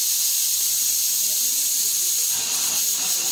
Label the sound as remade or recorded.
remade